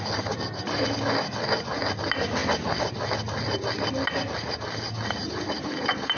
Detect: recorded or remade recorded